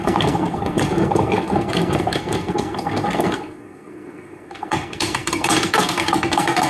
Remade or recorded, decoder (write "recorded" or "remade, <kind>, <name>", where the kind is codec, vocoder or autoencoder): remade, codec, SNAC